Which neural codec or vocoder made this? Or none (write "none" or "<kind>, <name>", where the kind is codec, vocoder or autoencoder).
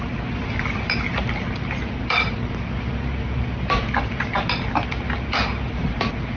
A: none